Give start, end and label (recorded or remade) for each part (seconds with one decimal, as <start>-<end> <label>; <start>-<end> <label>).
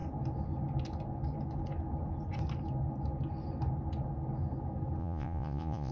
0.0-5.0 recorded; 5.0-5.9 remade